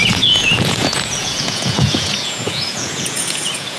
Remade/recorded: remade